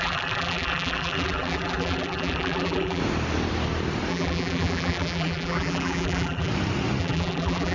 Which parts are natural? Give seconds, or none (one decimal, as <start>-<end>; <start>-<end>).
3.0-4.1; 6.5-7.0